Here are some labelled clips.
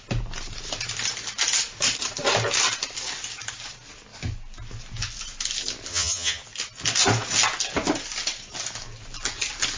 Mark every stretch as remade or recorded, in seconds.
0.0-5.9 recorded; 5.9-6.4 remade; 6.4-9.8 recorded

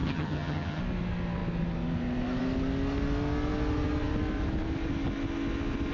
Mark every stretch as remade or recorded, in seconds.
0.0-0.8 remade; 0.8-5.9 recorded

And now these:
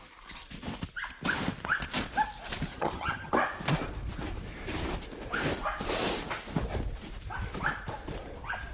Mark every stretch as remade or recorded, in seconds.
0.0-2.7 recorded; 2.7-3.3 remade; 3.3-8.7 recorded

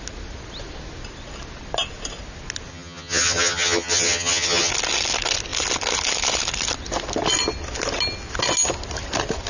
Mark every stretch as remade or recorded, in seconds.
0.0-2.7 recorded; 2.7-4.7 remade; 4.7-9.5 recorded